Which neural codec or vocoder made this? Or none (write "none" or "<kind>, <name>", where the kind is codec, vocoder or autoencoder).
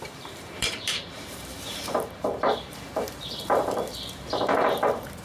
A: vocoder, BigVGAN v2